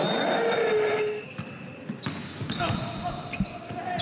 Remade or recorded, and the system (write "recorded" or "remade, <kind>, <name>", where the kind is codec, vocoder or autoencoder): recorded